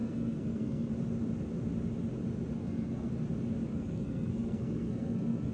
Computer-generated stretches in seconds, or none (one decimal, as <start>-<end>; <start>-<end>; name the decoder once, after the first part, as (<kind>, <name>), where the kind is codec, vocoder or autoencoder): 0.0-0.9 (codec, SNAC); 2.6-3.1; 3.7-5.5